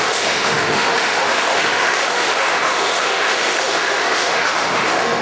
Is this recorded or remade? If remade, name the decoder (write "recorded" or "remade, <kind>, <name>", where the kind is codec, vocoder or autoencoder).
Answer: remade, autoencoder, DAC-VAE